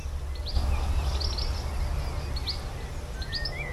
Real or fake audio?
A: real